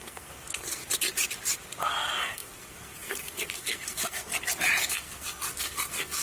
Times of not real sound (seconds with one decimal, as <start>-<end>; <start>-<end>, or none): 0.0-0.8; 1.8-4.3; 4.8-6.2